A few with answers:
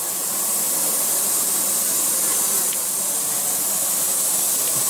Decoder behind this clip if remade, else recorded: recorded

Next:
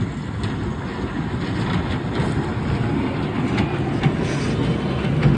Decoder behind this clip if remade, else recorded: recorded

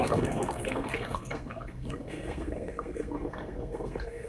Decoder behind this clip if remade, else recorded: remade, codec, SNAC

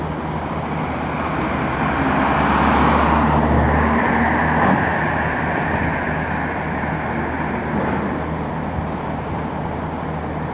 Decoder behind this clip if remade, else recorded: recorded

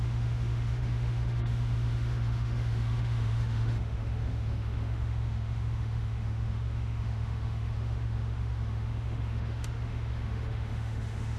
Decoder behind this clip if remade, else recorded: remade, autoencoder, DAC-VAE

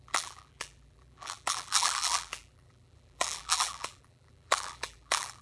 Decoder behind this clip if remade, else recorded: remade, vocoder, BigVGAN v2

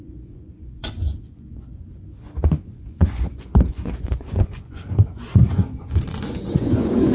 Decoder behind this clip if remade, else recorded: remade, vocoder, Vocos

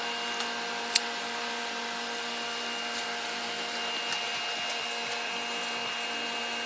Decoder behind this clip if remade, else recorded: recorded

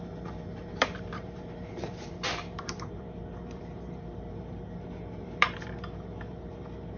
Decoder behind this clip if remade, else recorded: remade, vocoder, BigVGAN v2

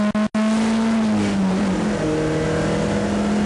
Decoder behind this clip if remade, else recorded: recorded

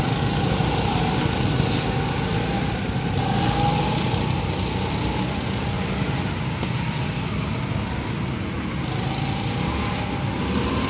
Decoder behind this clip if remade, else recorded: recorded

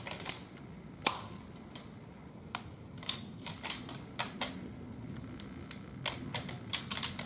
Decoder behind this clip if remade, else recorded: recorded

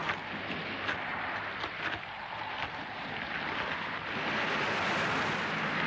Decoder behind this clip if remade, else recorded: recorded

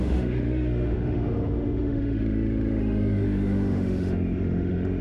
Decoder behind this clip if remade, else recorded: remade, autoencoder, DAC-VAE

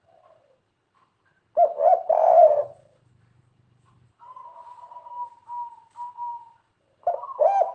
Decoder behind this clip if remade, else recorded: remade, vocoder, BigVGAN v2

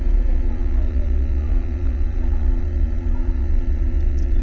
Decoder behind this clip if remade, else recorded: remade, vocoder, Vocos